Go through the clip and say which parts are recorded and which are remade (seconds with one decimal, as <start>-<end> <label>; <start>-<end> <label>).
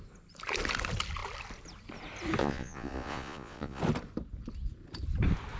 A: 0.0-2.4 recorded; 2.4-3.8 remade; 3.8-5.6 recorded